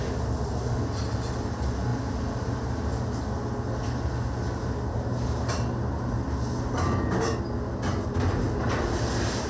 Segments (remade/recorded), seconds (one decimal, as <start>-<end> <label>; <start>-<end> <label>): 0.0-9.5 recorded